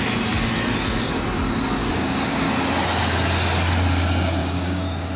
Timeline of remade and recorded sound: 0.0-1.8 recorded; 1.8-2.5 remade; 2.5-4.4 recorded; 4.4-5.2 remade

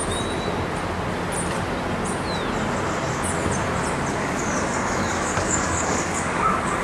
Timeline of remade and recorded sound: 0.0-4.1 recorded; 4.1-6.8 remade